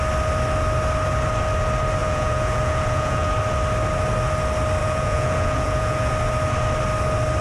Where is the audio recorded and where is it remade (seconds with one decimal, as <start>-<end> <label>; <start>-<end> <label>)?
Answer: 0.0-2.0 recorded; 2.0-3.3 remade; 3.3-4.8 recorded; 4.8-6.1 remade; 6.1-7.4 recorded